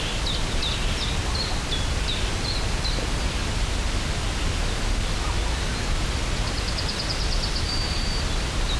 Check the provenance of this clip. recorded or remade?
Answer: recorded